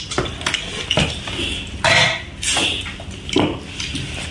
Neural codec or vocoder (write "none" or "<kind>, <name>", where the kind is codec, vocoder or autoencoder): none